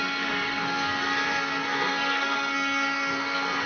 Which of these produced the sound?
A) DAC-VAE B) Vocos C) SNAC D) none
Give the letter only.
C